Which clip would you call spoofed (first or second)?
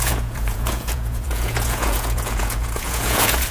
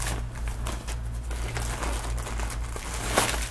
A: first